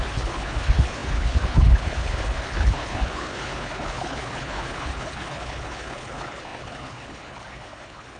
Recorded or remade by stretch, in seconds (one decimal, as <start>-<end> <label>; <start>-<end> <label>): 0.0-8.2 remade